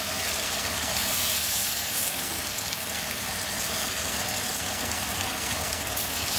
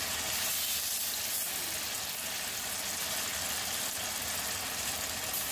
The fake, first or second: first